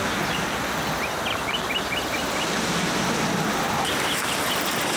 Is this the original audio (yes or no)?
yes